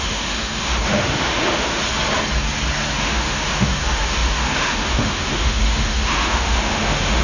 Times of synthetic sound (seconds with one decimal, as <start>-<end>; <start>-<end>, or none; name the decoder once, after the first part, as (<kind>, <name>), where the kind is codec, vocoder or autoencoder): 0.0-1.8 (autoencoder, DAC-VAE); 2.9-7.2

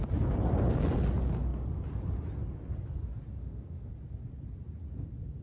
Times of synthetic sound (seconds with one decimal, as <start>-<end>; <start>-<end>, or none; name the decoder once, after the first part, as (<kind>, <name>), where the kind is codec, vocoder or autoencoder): 3.4-3.9 (autoencoder, DAC-VAE)

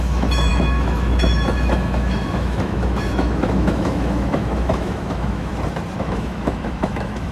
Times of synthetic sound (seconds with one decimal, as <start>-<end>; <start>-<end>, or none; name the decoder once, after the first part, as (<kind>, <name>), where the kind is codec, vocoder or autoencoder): 0.0-5.5 (autoencoder, DAC-VAE); 6.0-7.3

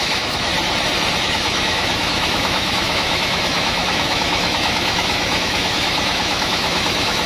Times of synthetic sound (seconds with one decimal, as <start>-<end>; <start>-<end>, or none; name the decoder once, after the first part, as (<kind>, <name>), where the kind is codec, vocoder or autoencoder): 0.0-0.5 (autoencoder, DAC-VAE); 1.2-7.3

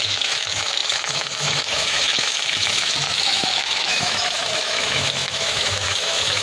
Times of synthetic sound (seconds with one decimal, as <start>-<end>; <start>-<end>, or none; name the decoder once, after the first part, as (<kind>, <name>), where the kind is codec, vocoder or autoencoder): 0.0-6.4 (autoencoder, DAC-VAE)